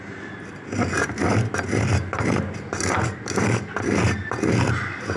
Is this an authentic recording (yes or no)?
yes